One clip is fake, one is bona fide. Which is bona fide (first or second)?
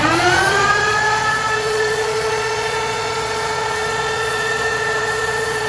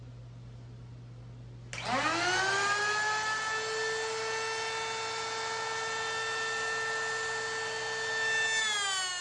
second